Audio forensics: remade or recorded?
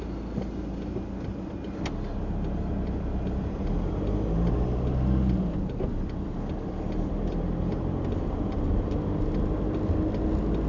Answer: recorded